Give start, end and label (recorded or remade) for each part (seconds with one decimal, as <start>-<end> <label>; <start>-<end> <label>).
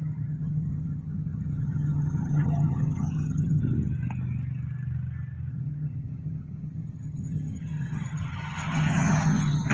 0.0-3.6 remade; 3.6-5.5 recorded; 5.5-9.7 remade